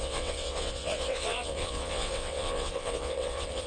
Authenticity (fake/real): fake